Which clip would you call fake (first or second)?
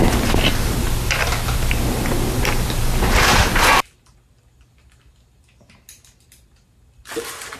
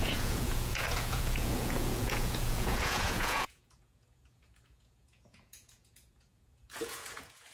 second